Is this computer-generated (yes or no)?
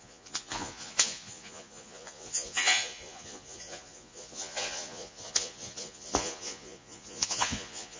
yes